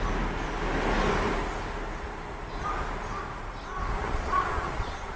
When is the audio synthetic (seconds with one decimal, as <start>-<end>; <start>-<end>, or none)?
4.0-5.2